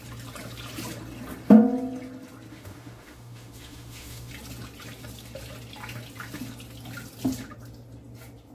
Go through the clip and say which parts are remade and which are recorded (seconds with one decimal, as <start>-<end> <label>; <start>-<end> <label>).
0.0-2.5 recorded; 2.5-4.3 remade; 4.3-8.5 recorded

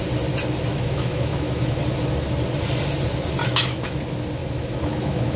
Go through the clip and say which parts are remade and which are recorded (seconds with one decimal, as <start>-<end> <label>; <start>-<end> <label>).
0.0-0.7 recorded; 0.7-1.8 remade; 1.8-3.4 recorded; 3.4-4.0 remade; 4.0-4.4 recorded; 4.4-5.4 remade

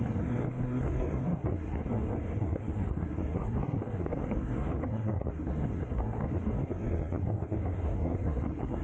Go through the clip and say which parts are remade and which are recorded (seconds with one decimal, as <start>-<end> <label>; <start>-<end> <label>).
0.0-8.8 remade

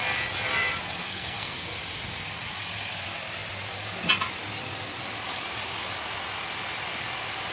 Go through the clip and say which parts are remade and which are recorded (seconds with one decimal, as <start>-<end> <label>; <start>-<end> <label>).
0.0-1.0 recorded; 1.0-1.8 remade; 1.8-7.5 recorded

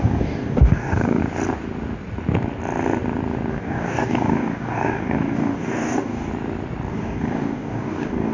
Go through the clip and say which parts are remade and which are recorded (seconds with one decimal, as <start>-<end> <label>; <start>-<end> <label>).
0.0-1.2 remade; 1.2-3.5 recorded; 3.5-6.3 remade; 6.3-6.9 recorded; 6.9-8.3 remade

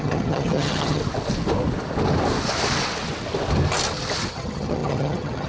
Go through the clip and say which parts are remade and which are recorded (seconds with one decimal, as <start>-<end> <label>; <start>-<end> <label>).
0.0-1.0 remade; 1.0-4.3 recorded; 4.3-5.5 remade

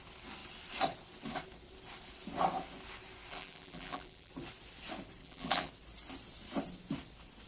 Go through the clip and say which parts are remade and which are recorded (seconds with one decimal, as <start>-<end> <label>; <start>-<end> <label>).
0.0-3.3 recorded; 3.3-4.3 remade; 4.3-5.2 recorded; 5.2-5.7 remade; 5.7-7.5 recorded

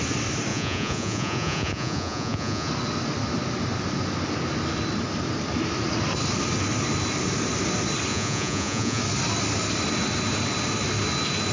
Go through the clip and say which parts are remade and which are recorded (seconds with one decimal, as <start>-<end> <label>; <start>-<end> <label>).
0.0-0.5 recorded; 0.5-2.7 remade; 2.7-8.1 recorded; 8.1-9.0 remade; 9.0-11.5 recorded